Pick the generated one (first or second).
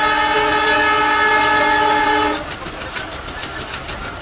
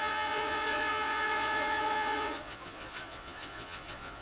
second